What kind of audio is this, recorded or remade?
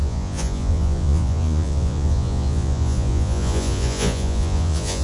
remade